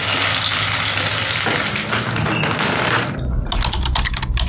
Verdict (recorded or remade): recorded